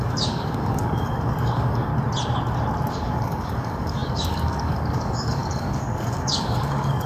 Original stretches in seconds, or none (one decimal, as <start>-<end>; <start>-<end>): 1.9-2.9